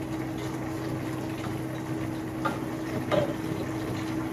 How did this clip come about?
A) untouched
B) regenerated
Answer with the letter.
A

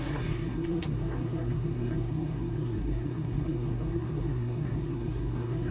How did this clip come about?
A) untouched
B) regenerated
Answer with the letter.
B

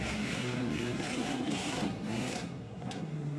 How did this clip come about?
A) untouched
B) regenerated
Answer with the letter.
B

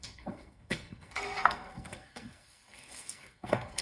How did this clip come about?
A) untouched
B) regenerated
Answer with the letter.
B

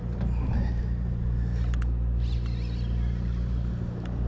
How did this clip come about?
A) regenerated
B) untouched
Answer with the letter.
B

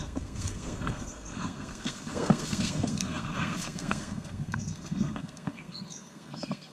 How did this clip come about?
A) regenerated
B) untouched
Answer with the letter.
A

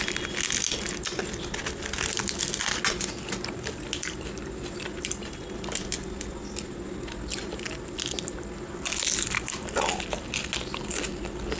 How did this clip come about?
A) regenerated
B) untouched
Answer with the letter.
B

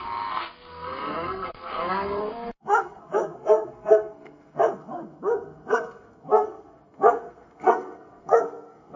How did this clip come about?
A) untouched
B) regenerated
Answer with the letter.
B